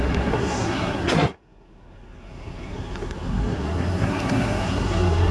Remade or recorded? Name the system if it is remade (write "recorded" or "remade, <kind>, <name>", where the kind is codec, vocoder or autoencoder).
remade, codec, SNAC